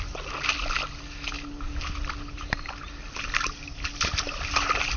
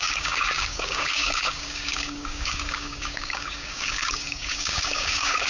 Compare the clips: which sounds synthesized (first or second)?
second